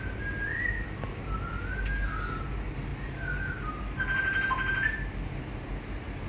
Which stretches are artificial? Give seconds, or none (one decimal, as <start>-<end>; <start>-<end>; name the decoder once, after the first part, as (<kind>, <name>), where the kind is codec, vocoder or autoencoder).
none